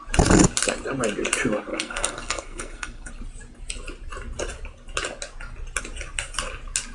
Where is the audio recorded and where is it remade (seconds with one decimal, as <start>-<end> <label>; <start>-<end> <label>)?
0.0-1.7 recorded; 1.7-3.1 remade; 3.1-6.9 recorded